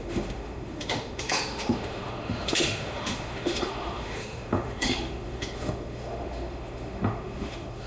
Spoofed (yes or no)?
yes